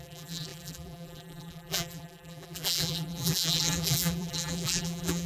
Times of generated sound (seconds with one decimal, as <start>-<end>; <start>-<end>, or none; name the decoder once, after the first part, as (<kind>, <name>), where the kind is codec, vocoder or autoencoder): 0.0-5.3 (vocoder, BigVGAN v2)